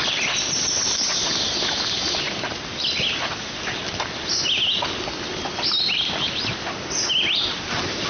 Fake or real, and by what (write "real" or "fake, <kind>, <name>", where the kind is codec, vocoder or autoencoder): real